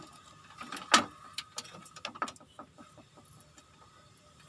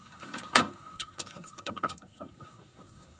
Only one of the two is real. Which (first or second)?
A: first